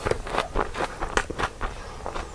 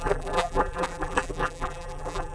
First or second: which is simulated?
second